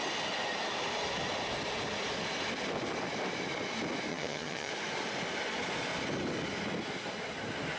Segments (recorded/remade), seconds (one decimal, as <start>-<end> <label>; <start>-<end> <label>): 0.0-4.1 recorded; 4.1-4.7 remade; 4.7-7.8 recorded